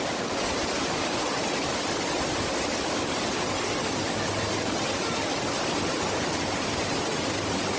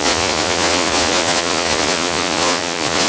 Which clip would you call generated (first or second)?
second